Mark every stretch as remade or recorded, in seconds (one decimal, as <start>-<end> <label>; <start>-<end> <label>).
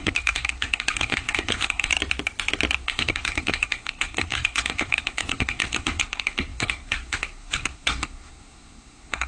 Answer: 0.0-1.9 remade; 1.9-2.8 recorded; 2.8-9.3 remade